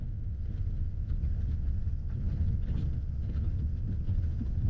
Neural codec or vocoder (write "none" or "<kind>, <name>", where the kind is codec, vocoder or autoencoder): none